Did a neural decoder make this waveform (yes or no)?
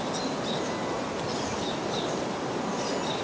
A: no